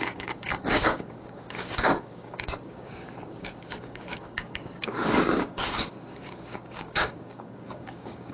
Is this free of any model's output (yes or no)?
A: no